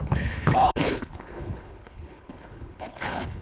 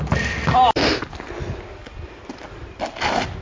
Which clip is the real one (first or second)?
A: second